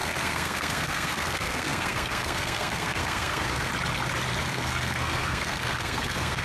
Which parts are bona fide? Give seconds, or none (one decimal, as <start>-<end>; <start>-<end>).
3.7-4.4

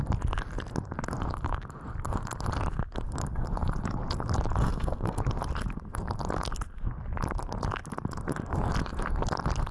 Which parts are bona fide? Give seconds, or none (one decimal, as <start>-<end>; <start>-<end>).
0.0-4.6; 5.2-9.7

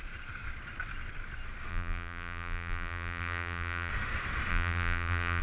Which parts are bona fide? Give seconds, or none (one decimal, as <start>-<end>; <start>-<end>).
0.0-1.7; 3.9-4.5

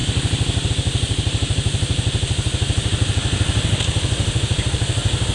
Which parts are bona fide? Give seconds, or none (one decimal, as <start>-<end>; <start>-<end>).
0.0-5.3

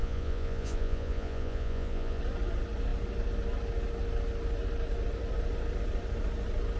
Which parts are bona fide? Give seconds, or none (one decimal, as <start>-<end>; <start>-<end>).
2.2-6.8

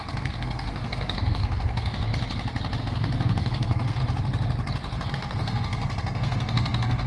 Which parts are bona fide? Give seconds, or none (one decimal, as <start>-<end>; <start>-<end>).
2.1-2.8; 4.0-5.1

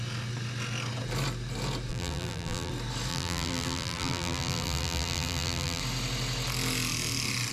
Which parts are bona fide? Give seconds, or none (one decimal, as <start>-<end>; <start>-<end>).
0.0-1.9; 2.7-3.1; 5.8-7.5